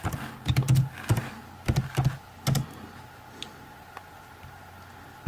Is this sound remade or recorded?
recorded